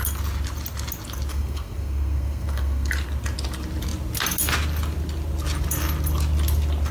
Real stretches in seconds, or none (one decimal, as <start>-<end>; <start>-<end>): 0.0-1.3; 2.9-6.9